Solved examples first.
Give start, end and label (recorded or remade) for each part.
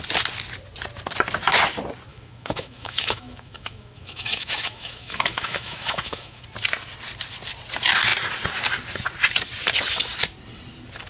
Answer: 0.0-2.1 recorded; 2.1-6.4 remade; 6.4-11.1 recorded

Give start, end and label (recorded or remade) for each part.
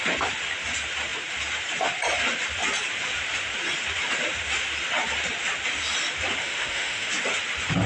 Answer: 0.0-6.4 recorded; 6.4-7.1 remade; 7.1-7.9 recorded